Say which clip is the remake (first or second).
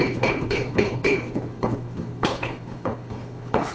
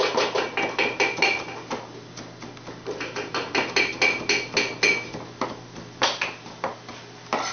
first